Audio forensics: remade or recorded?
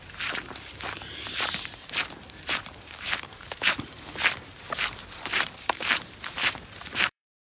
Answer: remade